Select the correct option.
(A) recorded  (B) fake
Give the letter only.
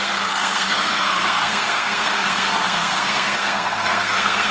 B